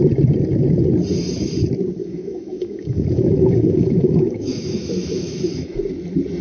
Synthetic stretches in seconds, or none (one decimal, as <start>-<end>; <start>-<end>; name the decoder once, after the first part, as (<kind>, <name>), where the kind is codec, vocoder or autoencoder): 2.0-5.8 (autoencoder, DAC-VAE)